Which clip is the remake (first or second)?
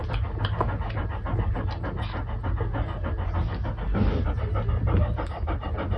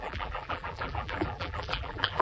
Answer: second